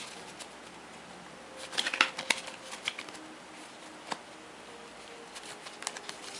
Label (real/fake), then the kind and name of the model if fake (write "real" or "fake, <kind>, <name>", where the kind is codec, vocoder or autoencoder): real